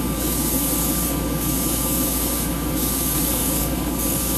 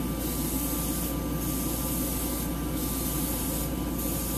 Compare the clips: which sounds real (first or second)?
second